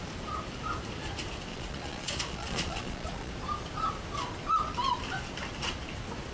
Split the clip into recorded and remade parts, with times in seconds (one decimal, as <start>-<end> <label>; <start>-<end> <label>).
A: 0.0-1.5 recorded; 1.5-3.3 remade; 3.3-6.3 recorded